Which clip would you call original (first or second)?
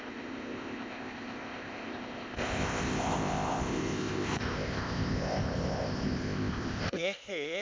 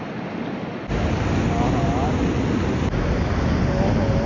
second